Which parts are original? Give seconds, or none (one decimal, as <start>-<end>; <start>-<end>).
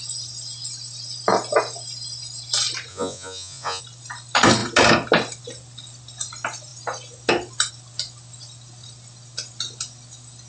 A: 0.0-2.9; 3.8-10.5